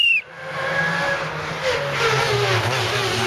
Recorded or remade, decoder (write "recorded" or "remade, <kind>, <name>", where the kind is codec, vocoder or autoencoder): recorded